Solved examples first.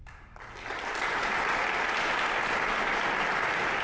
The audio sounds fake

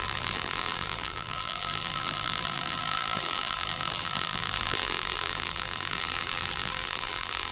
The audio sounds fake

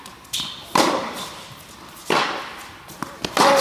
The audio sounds real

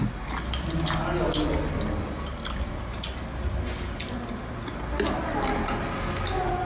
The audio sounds real